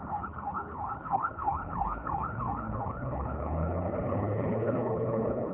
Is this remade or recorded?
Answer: remade